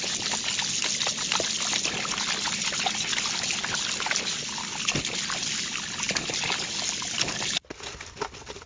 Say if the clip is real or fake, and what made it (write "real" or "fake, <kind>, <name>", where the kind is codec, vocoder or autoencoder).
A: real